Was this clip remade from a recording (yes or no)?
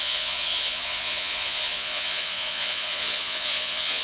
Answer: yes